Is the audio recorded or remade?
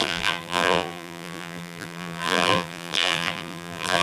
remade